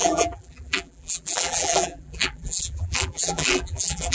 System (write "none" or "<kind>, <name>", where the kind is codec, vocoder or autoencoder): vocoder, BigVGAN v2